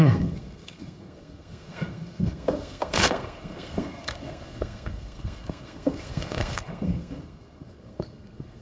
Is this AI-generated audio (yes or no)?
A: yes